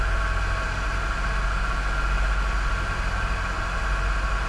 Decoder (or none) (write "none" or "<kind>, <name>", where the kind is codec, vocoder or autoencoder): none